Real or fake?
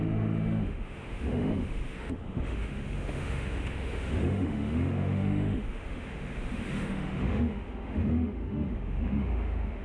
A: fake